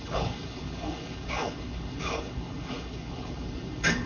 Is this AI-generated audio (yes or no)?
yes